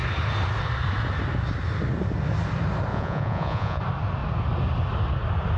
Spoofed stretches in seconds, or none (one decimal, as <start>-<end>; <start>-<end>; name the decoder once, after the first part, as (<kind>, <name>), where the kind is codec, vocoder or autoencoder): 2.9-3.8 (vocoder, Vocos)